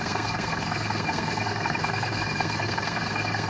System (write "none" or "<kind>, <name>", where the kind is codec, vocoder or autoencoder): codec, SNAC